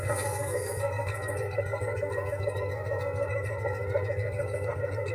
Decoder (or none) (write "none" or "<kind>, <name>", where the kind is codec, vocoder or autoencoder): codec, SNAC